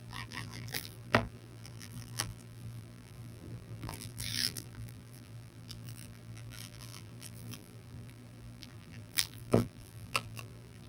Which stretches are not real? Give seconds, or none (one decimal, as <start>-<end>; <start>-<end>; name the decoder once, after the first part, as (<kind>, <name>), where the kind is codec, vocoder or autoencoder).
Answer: 0.0-10.9 (vocoder, BigVGAN v2)